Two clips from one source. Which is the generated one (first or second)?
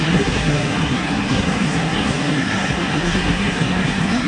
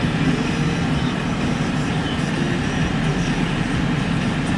first